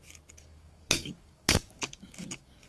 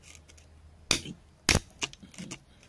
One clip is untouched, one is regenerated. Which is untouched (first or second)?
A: second